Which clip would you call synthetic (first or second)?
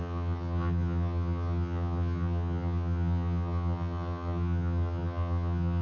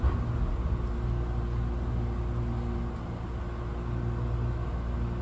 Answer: first